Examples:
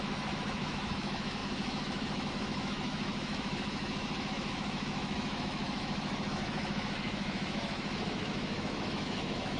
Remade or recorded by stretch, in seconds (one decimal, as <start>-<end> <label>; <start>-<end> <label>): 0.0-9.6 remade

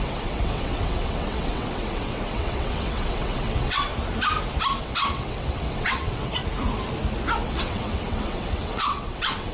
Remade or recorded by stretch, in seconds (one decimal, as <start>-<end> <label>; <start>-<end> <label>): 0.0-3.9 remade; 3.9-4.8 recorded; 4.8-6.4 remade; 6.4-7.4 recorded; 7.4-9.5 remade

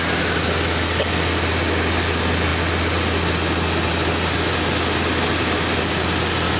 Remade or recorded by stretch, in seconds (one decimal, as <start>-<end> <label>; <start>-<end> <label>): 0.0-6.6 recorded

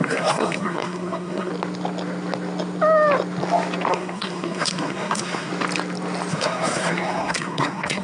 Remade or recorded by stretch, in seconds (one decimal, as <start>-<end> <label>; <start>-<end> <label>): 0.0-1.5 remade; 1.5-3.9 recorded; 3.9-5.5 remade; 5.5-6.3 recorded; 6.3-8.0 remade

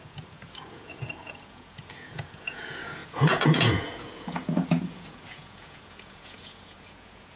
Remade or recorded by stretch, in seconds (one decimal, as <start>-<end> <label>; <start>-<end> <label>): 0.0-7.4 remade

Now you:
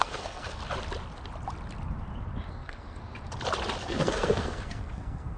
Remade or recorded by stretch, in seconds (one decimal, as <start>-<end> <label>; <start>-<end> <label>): 0.0-0.6 remade; 0.6-2.5 recorded; 2.5-3.0 remade; 3.0-3.8 recorded; 3.8-5.4 remade

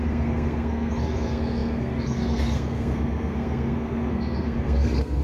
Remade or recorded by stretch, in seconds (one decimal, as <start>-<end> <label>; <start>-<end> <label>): 0.0-5.2 remade

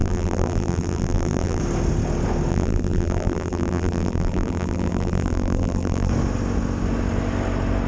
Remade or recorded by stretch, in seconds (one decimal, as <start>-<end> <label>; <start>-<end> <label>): 0.0-1.6 remade; 1.6-2.5 recorded; 2.5-6.1 remade; 6.1-7.9 recorded